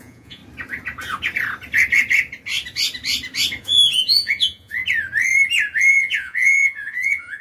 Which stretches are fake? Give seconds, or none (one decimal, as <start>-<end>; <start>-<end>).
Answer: 0.0-0.4; 3.6-4.8; 5.9-7.4